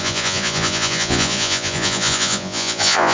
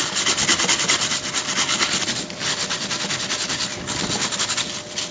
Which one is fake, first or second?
first